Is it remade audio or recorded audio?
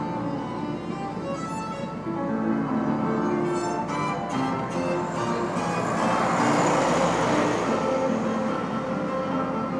recorded